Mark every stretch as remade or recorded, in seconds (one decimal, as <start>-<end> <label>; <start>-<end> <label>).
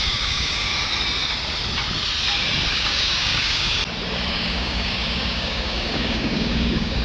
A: 0.0-0.7 remade; 0.7-2.7 recorded; 2.7-3.8 remade; 3.8-4.3 recorded; 4.3-7.0 remade